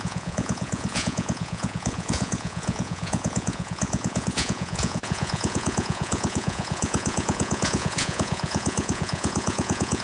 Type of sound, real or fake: fake